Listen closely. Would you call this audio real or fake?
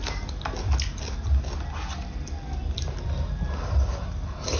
real